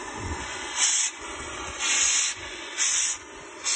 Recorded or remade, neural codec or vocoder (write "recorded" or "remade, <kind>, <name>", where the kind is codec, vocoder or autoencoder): remade, vocoder, Vocos